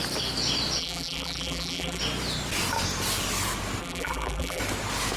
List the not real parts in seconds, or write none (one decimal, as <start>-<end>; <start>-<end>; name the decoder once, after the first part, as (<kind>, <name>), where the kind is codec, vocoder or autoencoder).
0.8-2.0 (vocoder, BigVGAN v2); 3.8-4.6